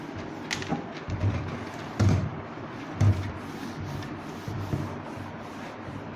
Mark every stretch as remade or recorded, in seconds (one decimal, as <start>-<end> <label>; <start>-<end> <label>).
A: 0.0-6.2 recorded